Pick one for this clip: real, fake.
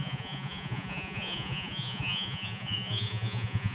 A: fake